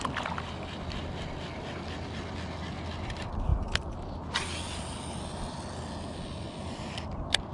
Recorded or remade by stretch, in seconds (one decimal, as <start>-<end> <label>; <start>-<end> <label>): 0.0-7.5 recorded